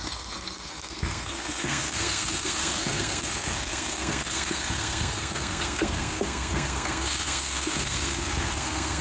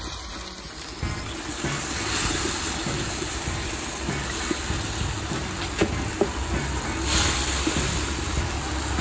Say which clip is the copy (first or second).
first